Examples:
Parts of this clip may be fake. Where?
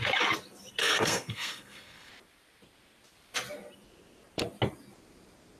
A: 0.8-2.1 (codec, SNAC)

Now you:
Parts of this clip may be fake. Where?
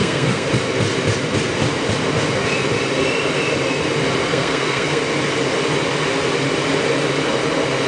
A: 0.0-0.5 (codec, SNAC); 4.3-5.0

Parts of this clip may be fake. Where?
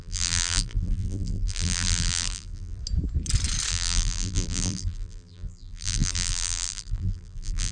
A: 0.0-2.8 (vocoder, BigVGAN v2); 3.7-7.7